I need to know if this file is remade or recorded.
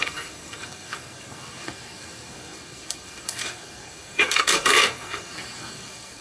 remade